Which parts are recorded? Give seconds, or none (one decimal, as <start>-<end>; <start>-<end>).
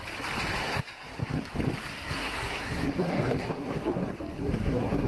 0.0-0.6; 1.5-1.9